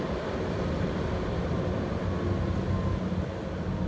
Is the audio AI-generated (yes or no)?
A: no